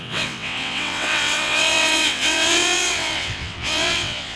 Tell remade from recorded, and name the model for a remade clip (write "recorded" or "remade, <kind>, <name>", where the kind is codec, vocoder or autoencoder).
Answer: remade, vocoder, WaveNeXt